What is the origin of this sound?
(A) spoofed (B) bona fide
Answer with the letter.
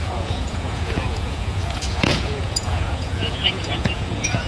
A